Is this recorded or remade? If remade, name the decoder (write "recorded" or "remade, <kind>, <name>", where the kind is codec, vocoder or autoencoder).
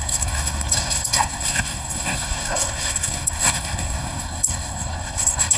remade, codec, SNAC